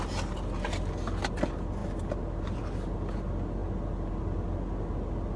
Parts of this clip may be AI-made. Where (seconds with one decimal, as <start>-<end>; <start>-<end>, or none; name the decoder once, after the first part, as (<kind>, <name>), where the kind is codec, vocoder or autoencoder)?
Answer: none